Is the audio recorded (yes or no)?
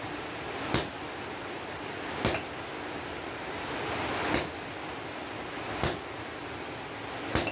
yes